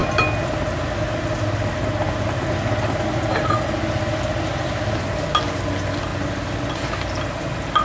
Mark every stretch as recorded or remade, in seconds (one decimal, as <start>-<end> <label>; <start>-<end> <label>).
0.0-7.8 recorded